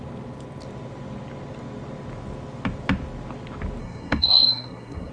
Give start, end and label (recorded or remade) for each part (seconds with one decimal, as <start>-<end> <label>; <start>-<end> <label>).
0.0-3.8 recorded; 3.8-5.1 remade